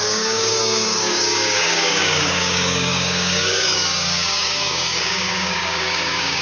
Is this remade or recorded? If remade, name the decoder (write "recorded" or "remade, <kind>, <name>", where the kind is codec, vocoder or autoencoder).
remade, codec, DAC